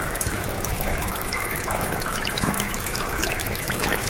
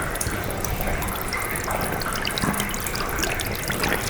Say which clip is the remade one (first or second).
first